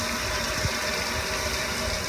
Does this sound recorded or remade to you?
recorded